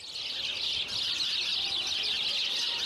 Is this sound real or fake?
real